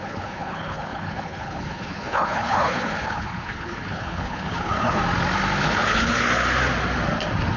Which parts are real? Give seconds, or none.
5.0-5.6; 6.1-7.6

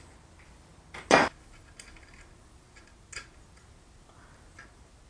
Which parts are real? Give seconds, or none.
0.0-5.1

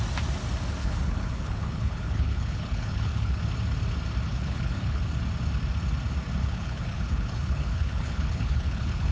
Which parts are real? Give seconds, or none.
0.0-0.8; 3.4-4.3; 5.0-6.4

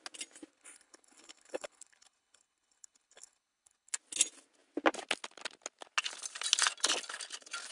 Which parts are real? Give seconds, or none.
0.0-0.5; 3.9-7.7

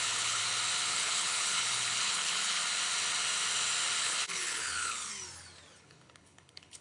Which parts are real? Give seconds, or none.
0.4-0.9; 2.6-4.0; 5.1-5.8

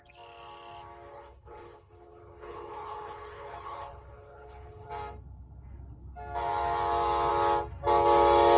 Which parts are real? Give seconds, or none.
0.0-1.1; 4.9-8.6

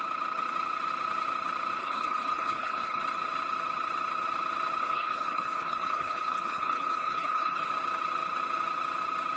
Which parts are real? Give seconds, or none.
0.0-1.8; 3.0-4.8; 7.7-9.4

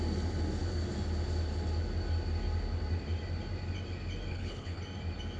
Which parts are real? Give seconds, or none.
0.0-4.3; 4.8-5.4